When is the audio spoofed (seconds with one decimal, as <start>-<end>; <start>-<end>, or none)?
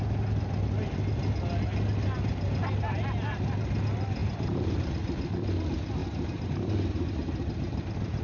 4.2-4.9; 6.0-8.2